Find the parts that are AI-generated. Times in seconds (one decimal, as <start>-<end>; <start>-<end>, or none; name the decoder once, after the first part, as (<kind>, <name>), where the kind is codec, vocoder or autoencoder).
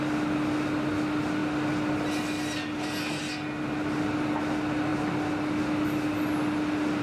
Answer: none